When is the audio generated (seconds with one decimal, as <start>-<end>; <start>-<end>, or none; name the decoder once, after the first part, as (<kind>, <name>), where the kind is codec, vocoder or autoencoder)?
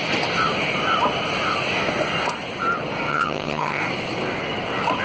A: 3.1-3.8 (vocoder, HiFi-GAN)